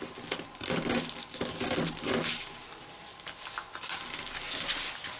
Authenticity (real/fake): real